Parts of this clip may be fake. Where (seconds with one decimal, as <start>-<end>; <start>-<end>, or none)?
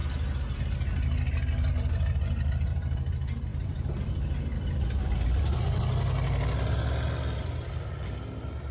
3.5-5.8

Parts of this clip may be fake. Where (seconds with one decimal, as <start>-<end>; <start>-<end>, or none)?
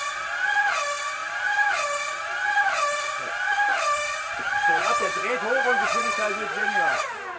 1.2-2.0; 3.7-5.0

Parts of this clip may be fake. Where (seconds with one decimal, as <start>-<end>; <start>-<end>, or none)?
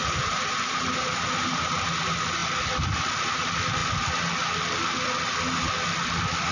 0.0-1.8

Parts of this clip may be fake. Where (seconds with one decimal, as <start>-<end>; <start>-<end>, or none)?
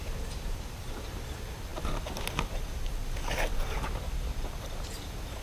none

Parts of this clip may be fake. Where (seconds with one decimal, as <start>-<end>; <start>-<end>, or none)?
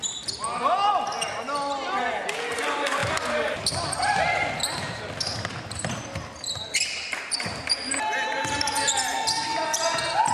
none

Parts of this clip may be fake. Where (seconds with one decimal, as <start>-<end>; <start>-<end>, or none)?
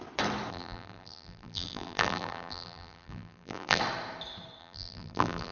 0.5-3.8; 4.6-5.5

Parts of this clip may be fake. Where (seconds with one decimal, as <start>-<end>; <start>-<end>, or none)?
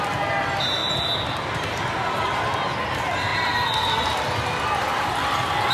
0.0-0.8; 1.4-3.3; 5.0-5.7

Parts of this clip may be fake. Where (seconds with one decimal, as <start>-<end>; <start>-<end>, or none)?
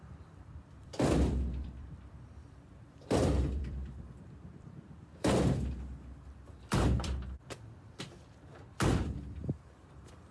0.0-8.5; 9.1-10.3